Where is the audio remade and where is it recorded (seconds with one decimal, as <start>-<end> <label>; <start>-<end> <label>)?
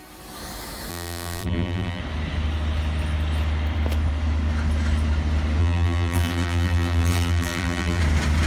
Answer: 0.0-0.9 recorded; 0.9-2.0 remade; 2.0-5.6 recorded; 5.6-8.0 remade; 8.0-8.5 recorded